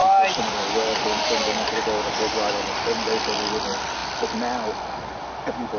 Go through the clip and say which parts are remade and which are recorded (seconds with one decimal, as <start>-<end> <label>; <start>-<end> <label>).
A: 0.0-5.8 recorded